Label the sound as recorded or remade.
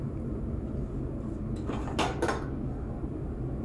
recorded